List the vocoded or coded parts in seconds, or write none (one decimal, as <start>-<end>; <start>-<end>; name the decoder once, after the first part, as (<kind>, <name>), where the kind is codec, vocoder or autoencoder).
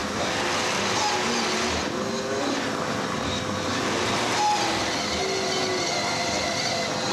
none